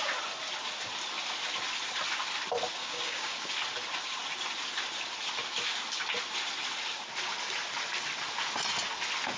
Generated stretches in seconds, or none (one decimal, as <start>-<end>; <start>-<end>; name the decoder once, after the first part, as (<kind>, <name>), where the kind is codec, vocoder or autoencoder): 2.8-3.5 (codec, DAC)